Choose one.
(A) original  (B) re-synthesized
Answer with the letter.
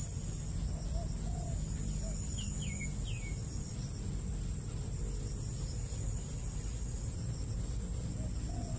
A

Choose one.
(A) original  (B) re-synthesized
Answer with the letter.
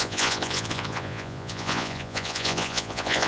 B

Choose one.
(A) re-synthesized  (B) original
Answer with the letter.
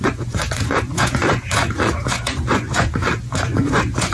A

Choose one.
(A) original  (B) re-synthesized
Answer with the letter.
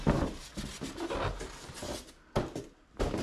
A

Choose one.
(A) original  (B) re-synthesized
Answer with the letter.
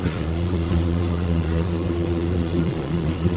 B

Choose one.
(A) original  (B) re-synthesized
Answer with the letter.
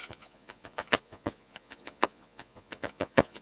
B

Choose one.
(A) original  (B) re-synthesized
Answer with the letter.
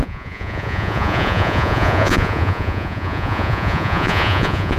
B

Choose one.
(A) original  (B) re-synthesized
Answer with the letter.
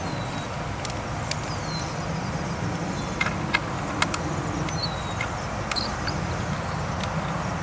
A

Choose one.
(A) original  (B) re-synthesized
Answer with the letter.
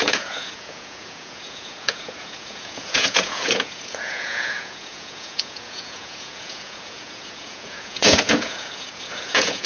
B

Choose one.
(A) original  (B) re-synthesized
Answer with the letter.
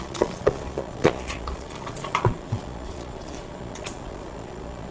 B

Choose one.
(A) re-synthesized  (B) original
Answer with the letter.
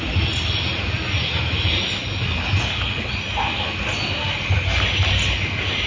B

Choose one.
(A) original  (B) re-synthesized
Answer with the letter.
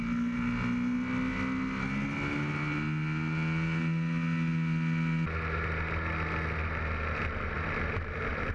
A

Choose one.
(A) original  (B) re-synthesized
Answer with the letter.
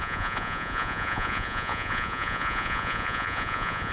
B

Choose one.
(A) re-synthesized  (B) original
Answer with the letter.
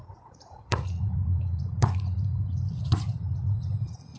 A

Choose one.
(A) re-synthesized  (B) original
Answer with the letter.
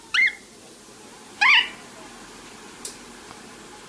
B